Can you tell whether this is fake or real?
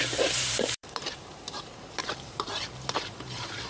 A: fake